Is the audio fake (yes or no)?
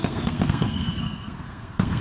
yes